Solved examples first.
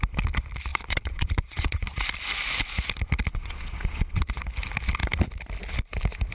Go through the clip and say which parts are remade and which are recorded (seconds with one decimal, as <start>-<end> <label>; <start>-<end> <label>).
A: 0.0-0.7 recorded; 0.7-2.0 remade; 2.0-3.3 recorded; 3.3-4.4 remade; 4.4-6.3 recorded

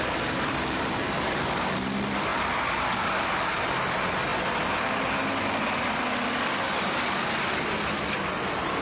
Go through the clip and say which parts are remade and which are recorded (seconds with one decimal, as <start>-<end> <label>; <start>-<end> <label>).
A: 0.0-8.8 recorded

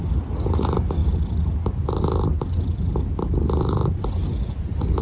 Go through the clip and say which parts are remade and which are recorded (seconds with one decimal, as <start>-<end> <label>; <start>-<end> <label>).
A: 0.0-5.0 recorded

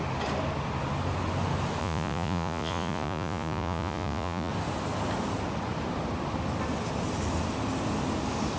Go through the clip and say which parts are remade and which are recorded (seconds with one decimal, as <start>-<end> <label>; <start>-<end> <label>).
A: 0.0-1.8 recorded; 1.8-4.5 remade; 4.5-8.6 recorded